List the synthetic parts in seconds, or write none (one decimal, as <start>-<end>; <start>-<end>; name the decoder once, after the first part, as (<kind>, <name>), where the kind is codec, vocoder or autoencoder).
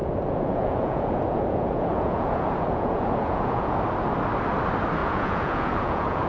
0.0-3.8 (vocoder, Vocos); 5.0-6.3